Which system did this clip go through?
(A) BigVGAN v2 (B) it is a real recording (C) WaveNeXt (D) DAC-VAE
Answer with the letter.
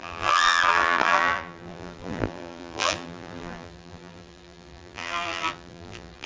A